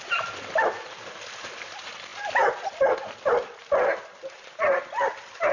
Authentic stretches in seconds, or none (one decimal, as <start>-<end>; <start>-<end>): 0.0-5.5